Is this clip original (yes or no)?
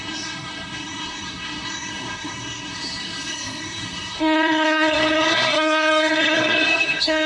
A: no